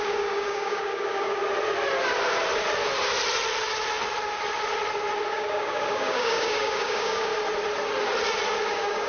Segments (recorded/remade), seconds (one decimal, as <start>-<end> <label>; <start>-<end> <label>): 0.0-1.4 remade; 1.4-5.3 recorded; 5.3-7.3 remade; 7.3-8.7 recorded; 8.7-9.1 remade

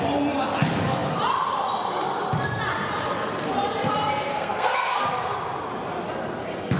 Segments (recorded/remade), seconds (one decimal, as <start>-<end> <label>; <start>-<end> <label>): 0.0-4.3 recorded; 4.3-5.0 remade; 5.0-6.8 recorded

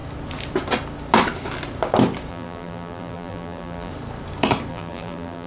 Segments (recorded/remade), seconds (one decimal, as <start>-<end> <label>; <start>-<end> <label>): 0.0-2.3 recorded; 2.3-3.9 remade; 3.9-4.7 recorded; 4.7-5.5 remade

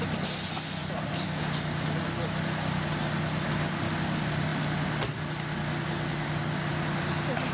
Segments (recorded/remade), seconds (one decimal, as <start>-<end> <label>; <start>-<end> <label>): 0.0-0.8 recorded; 0.8-1.4 remade; 1.4-7.5 recorded